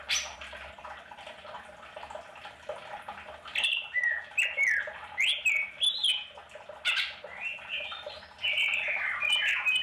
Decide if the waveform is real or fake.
real